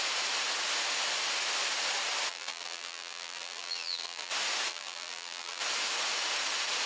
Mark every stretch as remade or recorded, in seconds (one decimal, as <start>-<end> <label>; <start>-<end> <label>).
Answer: 0.0-2.3 recorded; 2.3-4.3 remade; 4.3-4.7 recorded; 4.7-5.6 remade; 5.6-6.9 recorded